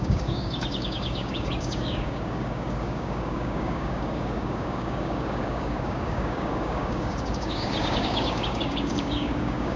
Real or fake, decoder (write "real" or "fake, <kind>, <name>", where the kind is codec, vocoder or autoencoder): fake, codec, DAC